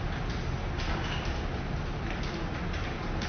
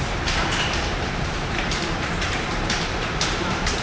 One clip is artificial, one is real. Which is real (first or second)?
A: first